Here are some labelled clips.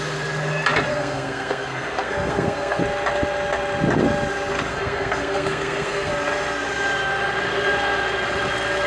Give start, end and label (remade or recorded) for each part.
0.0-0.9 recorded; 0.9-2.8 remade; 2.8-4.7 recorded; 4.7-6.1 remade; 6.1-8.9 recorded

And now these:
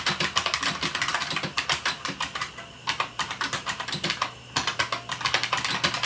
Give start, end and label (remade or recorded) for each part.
0.0-1.1 recorded; 1.1-4.7 remade; 4.7-6.1 recorded